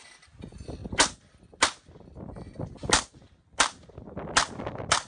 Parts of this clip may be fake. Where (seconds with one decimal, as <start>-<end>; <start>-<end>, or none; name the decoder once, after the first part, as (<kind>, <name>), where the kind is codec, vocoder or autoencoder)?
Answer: none